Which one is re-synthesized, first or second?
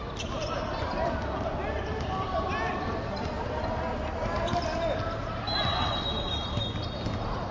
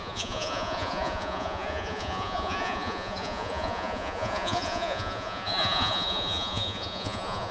second